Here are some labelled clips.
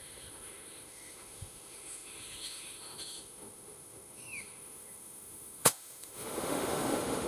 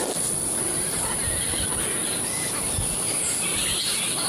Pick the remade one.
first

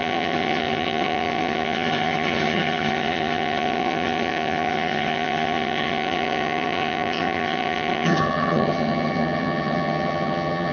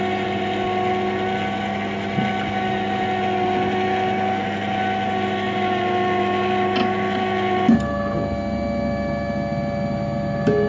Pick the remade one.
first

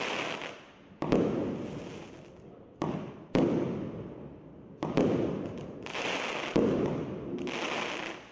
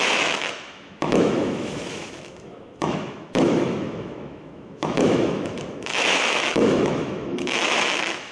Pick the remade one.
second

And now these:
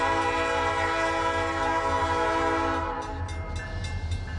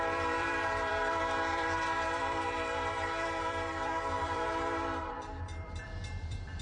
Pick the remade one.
second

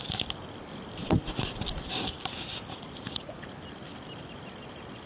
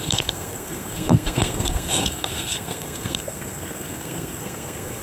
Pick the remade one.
second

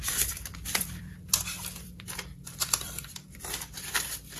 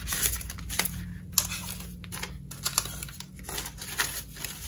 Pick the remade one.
first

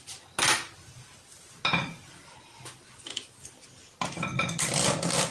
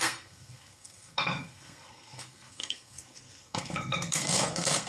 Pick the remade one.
second